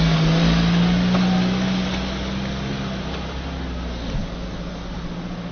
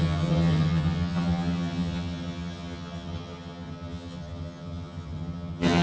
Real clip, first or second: first